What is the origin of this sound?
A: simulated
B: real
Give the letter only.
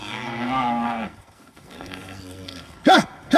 A